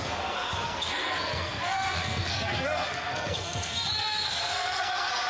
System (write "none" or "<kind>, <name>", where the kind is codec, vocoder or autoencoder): codec, SNAC